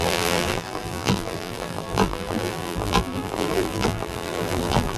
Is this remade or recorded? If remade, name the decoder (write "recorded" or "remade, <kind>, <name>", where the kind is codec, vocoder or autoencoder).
remade, vocoder, BigVGAN v2